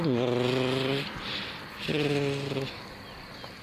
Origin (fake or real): real